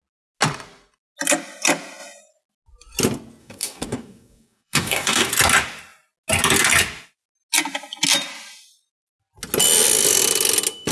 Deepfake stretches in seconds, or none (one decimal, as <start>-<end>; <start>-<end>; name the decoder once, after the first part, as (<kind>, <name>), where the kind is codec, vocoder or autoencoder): 3.4-5.3 (codec, DAC)